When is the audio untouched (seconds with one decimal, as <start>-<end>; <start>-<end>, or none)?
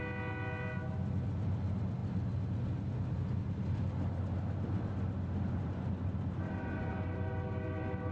0.0-8.1